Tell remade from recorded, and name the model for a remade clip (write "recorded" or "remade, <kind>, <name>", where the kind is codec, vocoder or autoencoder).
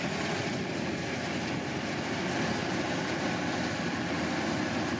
recorded